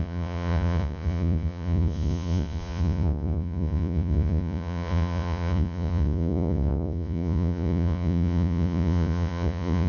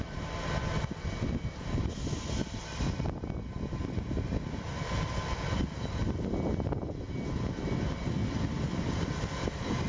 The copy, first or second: first